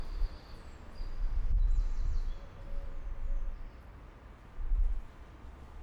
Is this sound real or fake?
real